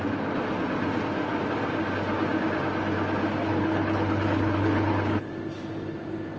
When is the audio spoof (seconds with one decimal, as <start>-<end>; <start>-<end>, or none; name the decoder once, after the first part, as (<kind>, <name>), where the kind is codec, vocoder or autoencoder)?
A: 3.4-5.3 (codec, HILCodec)